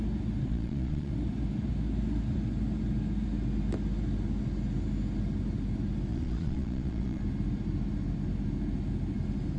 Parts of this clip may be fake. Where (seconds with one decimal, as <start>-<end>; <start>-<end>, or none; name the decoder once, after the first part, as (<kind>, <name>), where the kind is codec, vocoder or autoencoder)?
0.5-1.1 (vocoder, Vocos); 6.1-7.2